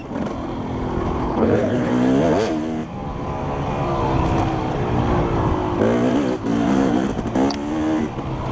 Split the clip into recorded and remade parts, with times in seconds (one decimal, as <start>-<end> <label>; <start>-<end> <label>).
0.0-1.2 recorded; 1.2-1.9 remade; 1.9-8.5 recorded